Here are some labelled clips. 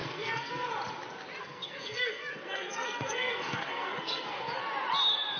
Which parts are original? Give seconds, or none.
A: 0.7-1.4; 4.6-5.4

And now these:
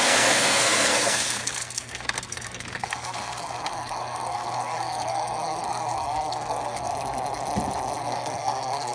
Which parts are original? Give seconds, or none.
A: 6.9-8.0

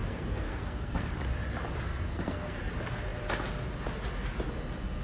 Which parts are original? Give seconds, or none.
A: 1.1-1.9; 2.7-5.0

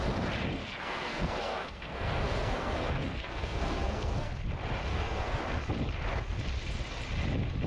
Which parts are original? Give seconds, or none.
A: 0.0-0.6; 4.3-4.9; 5.4-7.7

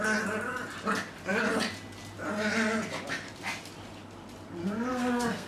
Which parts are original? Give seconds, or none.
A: 0.0-4.9